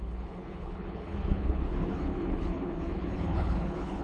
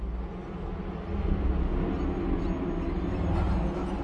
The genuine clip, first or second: second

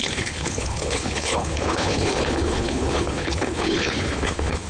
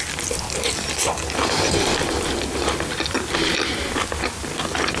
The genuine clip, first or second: second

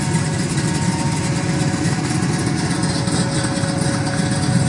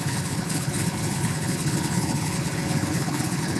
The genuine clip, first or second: first